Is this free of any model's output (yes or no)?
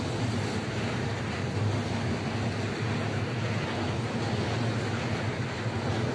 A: yes